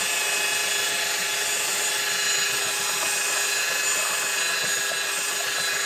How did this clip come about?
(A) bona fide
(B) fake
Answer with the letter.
A